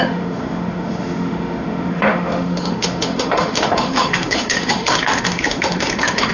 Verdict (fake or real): fake